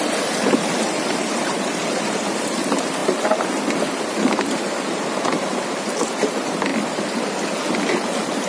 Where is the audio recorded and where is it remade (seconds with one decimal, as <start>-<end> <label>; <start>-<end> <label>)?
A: 0.0-6.7 remade; 6.7-7.7 recorded; 7.7-8.5 remade

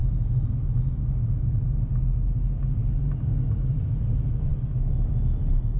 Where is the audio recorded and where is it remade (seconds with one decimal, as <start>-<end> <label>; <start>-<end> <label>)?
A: 0.0-5.8 recorded

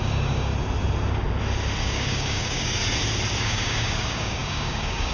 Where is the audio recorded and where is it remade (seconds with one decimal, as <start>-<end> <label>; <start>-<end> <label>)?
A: 0.0-0.5 remade; 0.5-1.8 recorded; 1.8-2.8 remade; 2.8-3.4 recorded; 3.4-5.1 remade